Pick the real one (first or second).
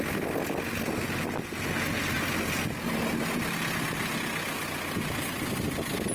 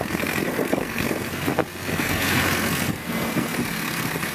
first